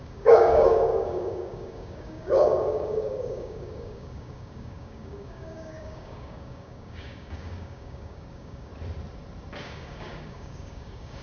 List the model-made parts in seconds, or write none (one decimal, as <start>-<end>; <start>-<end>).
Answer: 0.0-8.7; 9.6-11.2